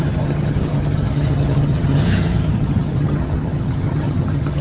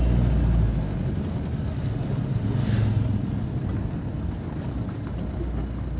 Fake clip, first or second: first